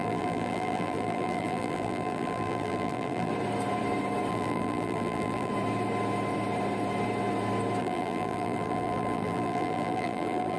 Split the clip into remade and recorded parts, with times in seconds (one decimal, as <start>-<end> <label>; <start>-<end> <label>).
0.0-3.3 remade; 3.3-4.3 recorded; 4.3-5.5 remade; 5.5-7.8 recorded; 7.8-10.6 remade